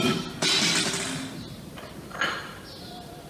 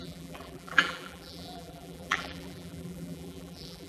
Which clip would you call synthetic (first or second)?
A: second